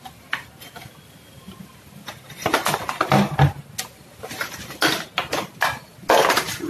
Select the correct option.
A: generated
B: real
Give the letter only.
B